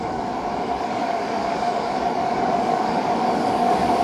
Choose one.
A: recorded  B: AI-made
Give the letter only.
B